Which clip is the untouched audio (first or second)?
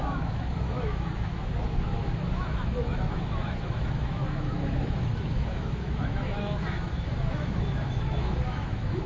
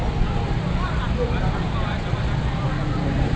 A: second